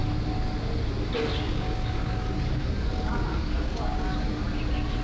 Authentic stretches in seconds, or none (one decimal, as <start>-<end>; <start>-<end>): 0.0-1.3; 4.3-5.0